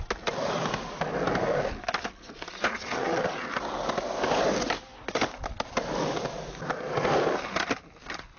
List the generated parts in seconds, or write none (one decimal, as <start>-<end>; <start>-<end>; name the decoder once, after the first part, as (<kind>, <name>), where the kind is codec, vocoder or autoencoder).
2.7-3.2 (vocoder, WaveNeXt)